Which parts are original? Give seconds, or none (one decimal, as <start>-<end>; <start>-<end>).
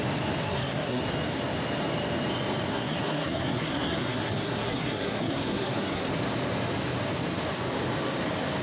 0.0-0.4; 1.0-2.7; 6.1-8.6